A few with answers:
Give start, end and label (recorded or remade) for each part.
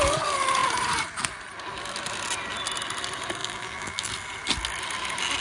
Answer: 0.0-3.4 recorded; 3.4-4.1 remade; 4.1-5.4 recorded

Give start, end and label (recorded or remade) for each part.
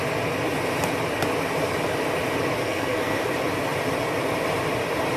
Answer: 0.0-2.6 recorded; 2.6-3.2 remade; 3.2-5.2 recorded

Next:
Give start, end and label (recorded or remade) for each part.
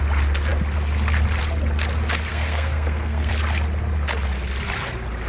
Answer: 0.0-2.3 recorded; 2.3-3.3 remade; 3.3-5.3 recorded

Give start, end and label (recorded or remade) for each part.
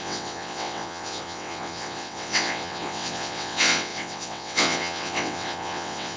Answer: 0.0-6.2 remade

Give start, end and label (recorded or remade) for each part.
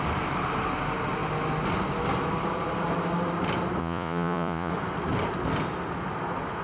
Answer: 0.0-3.8 recorded; 3.8-4.7 remade; 4.7-6.6 recorded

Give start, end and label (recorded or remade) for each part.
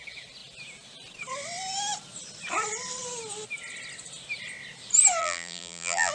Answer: 0.0-5.2 recorded; 5.2-6.1 remade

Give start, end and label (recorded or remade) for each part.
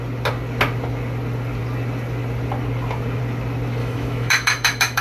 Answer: 0.0-3.8 recorded; 3.8-5.0 remade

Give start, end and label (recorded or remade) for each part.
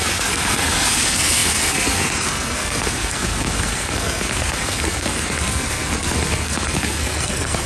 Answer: 0.0-7.7 remade